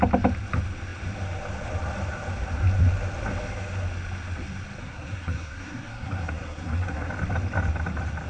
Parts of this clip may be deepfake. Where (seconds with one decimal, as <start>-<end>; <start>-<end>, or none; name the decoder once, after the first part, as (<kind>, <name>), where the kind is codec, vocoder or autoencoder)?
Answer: 4.8-7.1 (codec, SNAC)